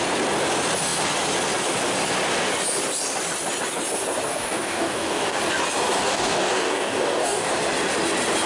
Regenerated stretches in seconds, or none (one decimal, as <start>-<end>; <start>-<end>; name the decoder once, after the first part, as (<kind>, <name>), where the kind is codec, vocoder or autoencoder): 4.3-5.4 (codec, DAC); 6.0-7.5